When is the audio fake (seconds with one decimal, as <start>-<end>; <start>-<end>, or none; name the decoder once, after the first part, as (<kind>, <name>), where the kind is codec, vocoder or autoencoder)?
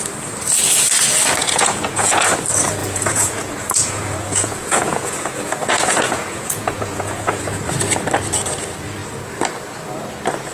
1.4-2.3 (vocoder, Vocos); 2.8-7.4